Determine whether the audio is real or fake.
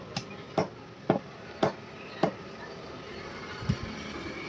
real